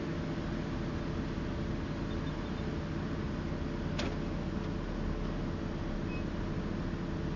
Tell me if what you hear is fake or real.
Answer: real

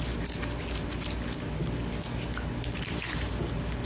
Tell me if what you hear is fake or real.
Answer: real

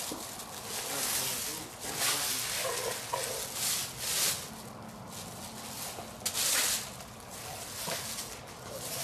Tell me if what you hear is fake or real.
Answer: real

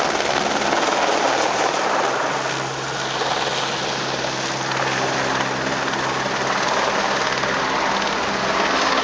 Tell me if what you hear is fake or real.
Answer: real